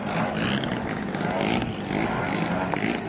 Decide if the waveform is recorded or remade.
recorded